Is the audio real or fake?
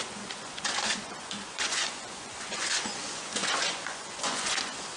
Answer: fake